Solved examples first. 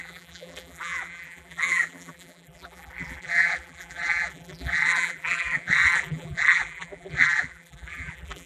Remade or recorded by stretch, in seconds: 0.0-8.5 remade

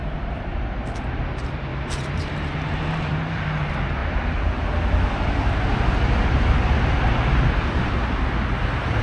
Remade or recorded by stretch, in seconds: 0.0-0.6 remade; 0.6-1.7 recorded; 1.7-3.4 remade; 3.4-9.0 recorded